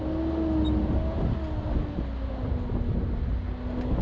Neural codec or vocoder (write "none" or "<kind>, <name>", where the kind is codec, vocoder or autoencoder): none